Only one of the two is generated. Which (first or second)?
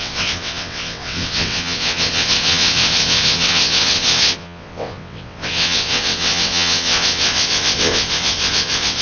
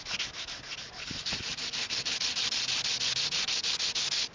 first